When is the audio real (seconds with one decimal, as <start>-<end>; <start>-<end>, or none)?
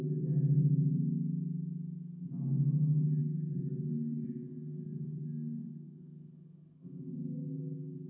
0.0-3.2